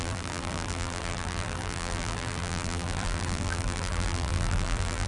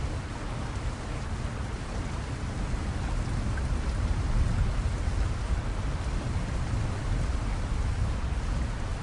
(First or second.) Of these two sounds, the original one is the second